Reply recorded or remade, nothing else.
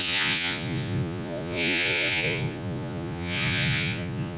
remade